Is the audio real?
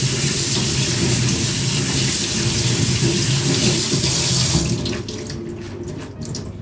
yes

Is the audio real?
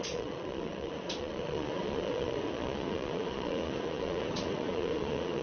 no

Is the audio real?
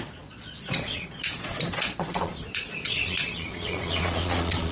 no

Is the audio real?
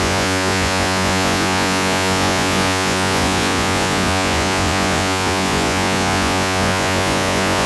no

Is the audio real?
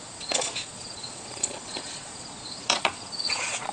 no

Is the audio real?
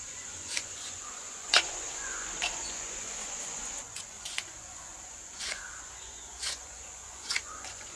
no